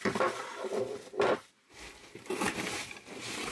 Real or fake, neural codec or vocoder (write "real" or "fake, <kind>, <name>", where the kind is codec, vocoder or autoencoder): real